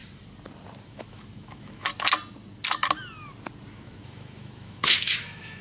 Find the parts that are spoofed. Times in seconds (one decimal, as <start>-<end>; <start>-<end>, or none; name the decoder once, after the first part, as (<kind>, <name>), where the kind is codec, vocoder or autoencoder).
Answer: 0.8-1.9 (autoencoder, DAC-VAE); 3.7-5.6